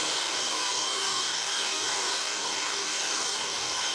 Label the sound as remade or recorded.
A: remade